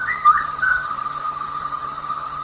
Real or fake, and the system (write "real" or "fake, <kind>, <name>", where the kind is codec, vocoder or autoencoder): fake, vocoder, HiFi-GAN